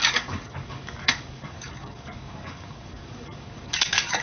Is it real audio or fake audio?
fake